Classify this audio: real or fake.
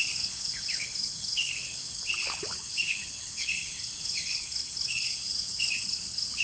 fake